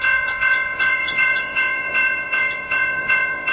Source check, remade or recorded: remade